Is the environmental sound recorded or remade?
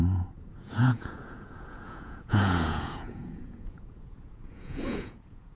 remade